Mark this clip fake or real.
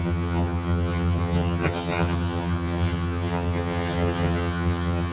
fake